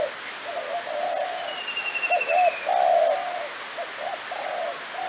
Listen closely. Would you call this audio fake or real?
real